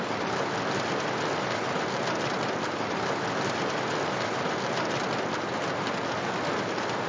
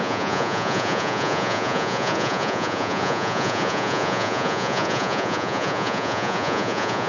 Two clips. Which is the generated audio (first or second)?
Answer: second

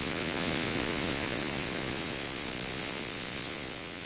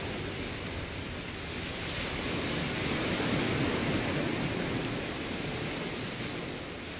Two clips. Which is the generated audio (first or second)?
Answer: first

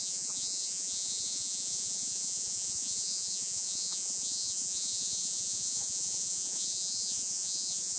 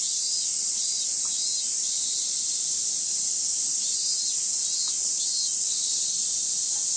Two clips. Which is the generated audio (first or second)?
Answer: first